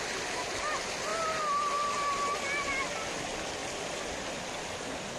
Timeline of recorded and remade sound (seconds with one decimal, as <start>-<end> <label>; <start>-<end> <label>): 0.0-5.2 recorded